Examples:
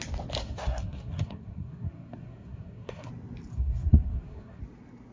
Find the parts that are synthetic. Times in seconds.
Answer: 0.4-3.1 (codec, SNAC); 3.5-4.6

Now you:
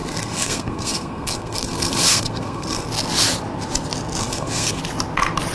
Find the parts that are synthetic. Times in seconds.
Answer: 0.0-2.9 (codec, SNAC); 4.2-4.8